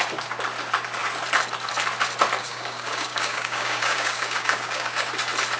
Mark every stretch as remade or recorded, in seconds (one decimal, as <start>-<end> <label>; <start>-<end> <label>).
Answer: 0.0-2.4 recorded; 2.4-5.1 remade; 5.1-5.6 recorded